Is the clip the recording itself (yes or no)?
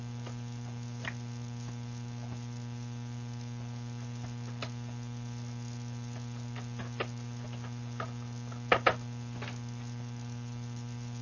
yes